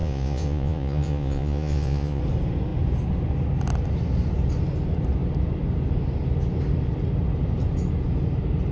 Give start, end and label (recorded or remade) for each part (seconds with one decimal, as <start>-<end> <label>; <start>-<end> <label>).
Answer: 0.0-2.2 remade; 2.2-8.7 recorded